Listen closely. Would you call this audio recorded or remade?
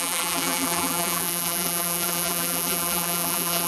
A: remade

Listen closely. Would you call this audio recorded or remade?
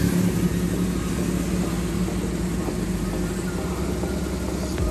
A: recorded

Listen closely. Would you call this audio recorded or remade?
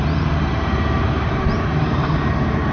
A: remade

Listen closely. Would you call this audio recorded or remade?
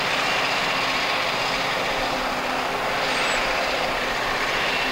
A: recorded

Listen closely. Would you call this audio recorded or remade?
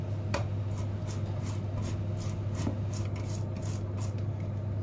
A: remade